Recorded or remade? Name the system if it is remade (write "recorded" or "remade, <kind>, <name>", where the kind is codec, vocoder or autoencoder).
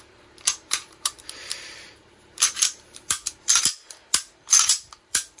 remade, vocoder, BigVGAN v2